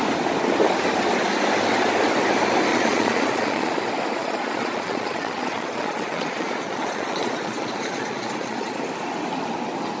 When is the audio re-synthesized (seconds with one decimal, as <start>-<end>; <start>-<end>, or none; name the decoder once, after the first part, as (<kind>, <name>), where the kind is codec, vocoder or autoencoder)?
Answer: 2.7-3.8 (vocoder, Vocos); 4.2-8.8